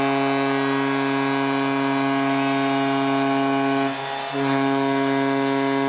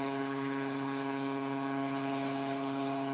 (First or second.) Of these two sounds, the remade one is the second